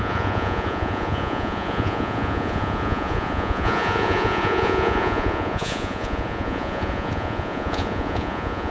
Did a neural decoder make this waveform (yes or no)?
yes